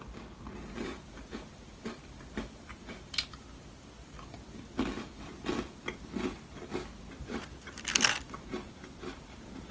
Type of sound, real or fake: real